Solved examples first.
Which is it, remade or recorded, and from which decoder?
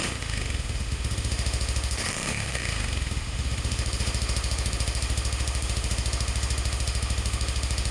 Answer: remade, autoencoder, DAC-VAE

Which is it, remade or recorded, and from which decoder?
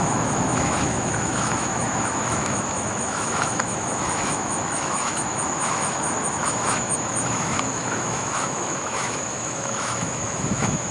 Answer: remade, autoencoder, DAC-VAE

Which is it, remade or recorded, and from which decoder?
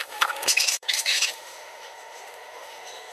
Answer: remade, autoencoder, DAC-VAE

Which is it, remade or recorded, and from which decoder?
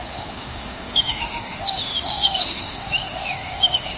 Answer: remade, autoencoder, DAC-VAE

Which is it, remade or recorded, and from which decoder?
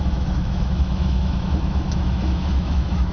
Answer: remade, autoencoder, DAC-VAE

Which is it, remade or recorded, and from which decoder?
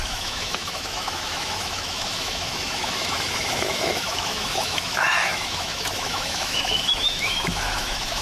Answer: remade, autoencoder, DAC-VAE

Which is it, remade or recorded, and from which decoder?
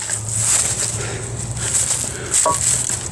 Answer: recorded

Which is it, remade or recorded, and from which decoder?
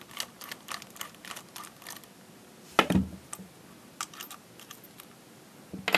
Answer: recorded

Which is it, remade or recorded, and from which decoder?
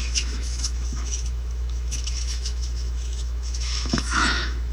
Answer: remade, autoencoder, DAC-VAE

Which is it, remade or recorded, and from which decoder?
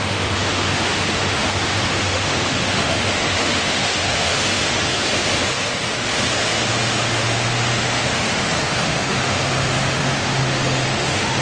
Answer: remade, autoencoder, DAC-VAE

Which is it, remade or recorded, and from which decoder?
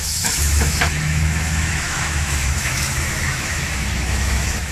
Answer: remade, autoencoder, DAC-VAE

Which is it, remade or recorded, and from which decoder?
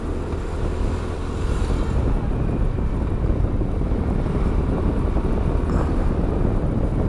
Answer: recorded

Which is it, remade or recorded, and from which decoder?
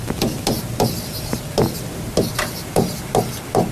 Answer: recorded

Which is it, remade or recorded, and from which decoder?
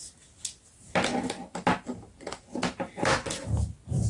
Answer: recorded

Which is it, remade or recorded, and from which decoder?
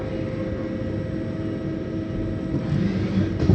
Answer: recorded